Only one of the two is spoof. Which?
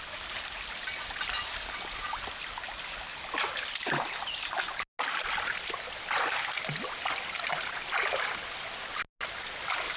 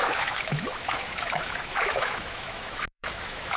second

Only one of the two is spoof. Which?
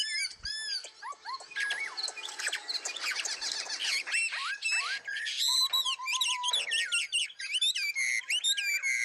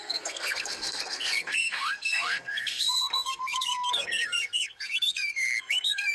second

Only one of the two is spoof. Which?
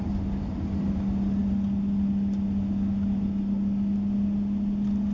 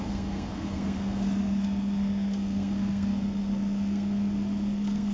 second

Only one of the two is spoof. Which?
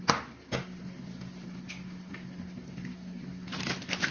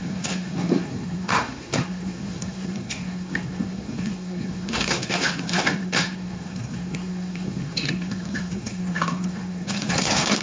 second